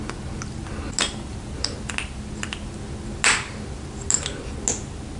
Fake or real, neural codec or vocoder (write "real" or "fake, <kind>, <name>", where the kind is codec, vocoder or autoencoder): real